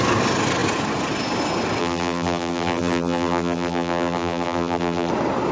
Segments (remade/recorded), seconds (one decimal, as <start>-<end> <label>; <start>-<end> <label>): 0.0-1.8 recorded; 1.8-5.1 remade; 5.1-5.5 recorded